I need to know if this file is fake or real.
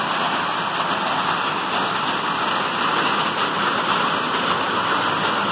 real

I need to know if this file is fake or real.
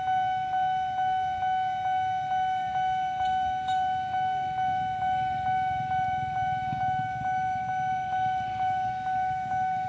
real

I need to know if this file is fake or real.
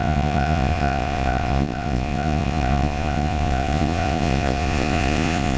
fake